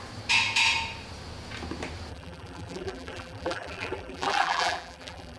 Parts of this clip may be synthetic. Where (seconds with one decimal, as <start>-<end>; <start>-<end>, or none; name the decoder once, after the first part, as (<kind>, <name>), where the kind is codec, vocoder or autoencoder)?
2.1-5.4 (vocoder, BigVGAN v2)